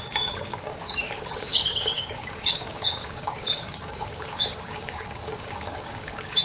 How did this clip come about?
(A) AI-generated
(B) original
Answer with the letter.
A